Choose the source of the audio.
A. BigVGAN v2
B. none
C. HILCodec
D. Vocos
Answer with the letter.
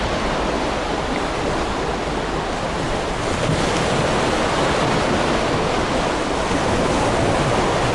B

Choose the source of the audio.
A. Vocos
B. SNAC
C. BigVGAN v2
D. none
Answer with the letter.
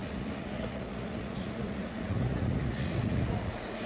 A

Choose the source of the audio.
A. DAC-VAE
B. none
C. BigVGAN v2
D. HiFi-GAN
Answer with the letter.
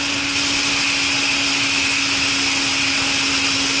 B